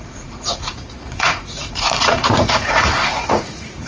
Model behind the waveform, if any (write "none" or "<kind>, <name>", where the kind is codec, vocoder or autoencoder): vocoder, Vocos